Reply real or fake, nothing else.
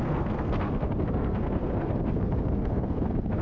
fake